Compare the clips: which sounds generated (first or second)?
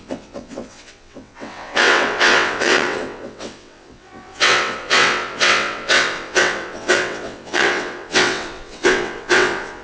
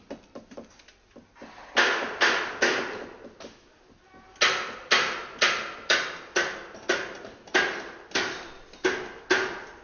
first